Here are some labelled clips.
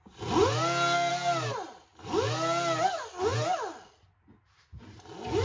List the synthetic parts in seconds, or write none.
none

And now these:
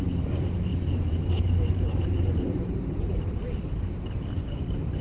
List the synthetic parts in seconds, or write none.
0.7-3.7 (vocoder, BigVGAN v2)

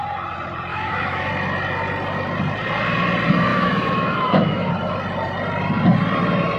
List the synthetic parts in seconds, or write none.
0.7-1.3 (autoencoder, DAC-VAE); 3.5-4.7